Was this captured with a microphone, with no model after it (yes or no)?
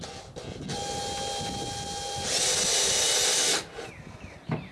yes